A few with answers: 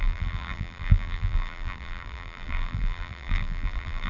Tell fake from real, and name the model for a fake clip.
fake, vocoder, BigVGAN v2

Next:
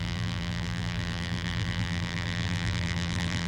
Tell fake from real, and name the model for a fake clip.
fake, vocoder, BigVGAN v2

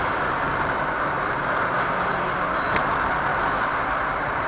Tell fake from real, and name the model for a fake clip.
real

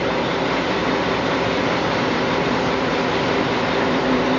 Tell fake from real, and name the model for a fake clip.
fake, vocoder, BigVGAN v2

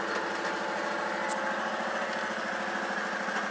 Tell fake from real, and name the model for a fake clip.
real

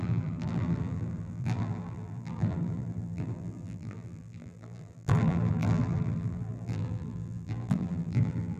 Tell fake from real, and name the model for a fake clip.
fake, vocoder, BigVGAN v2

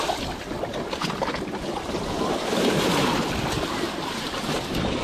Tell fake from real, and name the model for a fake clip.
real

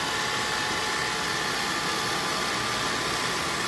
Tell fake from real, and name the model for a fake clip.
real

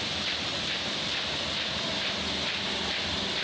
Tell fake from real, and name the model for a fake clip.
fake, vocoder, BigVGAN v2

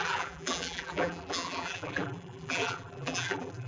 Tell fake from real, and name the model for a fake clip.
fake, vocoder, BigVGAN v2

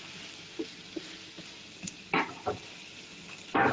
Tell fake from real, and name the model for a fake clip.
real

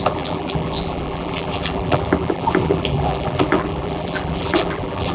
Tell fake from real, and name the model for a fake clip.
fake, vocoder, BigVGAN v2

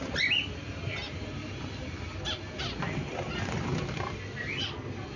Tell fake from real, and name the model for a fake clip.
real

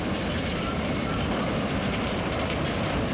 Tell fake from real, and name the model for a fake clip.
fake, vocoder, BigVGAN v2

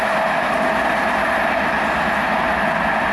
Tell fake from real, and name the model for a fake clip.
real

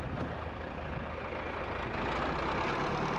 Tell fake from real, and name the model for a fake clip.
real